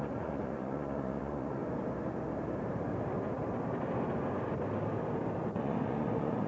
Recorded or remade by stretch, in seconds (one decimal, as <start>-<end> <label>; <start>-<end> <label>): 0.0-1.6 remade; 1.6-5.5 recorded; 5.5-6.5 remade